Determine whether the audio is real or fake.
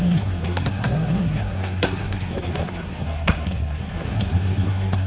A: fake